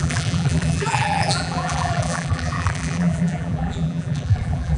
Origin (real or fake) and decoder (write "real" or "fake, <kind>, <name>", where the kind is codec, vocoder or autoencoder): fake, vocoder, BigVGAN v2